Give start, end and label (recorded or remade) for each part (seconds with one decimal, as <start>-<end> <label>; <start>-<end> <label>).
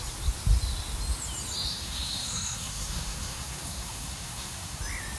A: 0.0-1.7 recorded; 1.7-4.8 remade; 4.8-5.2 recorded